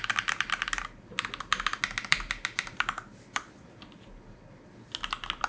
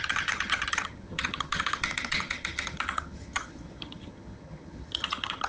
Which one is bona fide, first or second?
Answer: first